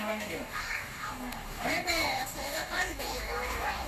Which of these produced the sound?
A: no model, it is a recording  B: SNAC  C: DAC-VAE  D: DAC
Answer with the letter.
D